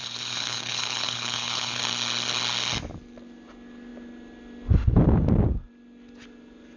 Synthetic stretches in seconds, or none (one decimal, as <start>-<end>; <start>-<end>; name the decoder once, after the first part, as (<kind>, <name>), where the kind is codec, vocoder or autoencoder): 0.0-1.8 (codec, HILCodec)